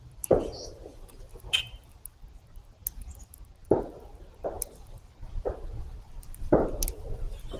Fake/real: fake